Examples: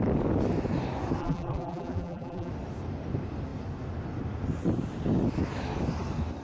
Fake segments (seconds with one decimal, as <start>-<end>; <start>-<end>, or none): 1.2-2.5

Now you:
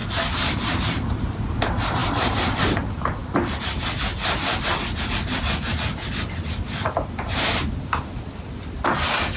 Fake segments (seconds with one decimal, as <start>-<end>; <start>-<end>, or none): 0.0-0.8; 2.0-2.6

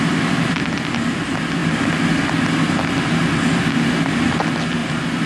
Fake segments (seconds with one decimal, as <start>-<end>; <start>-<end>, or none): 4.8-5.3

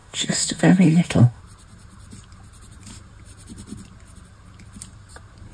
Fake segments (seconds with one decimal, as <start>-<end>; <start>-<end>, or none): 0.0-1.4